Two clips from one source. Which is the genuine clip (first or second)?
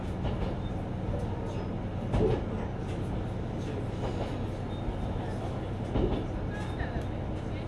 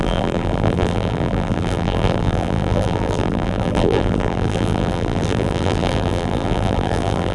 first